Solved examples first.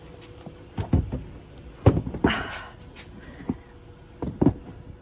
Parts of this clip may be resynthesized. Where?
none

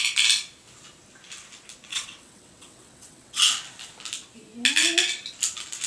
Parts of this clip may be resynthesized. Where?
1.9-3.4 (vocoder, WaveNeXt)

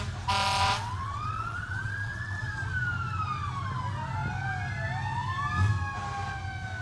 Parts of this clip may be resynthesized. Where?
0.6-2.4 (vocoder, WaveNeXt)